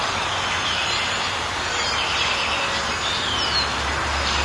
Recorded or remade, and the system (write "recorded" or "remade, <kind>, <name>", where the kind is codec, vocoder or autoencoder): recorded